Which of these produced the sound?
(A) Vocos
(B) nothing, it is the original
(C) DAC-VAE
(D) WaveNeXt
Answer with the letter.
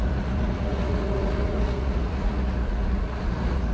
A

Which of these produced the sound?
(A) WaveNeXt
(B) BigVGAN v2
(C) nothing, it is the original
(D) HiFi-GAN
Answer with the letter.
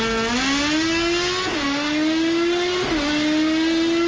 C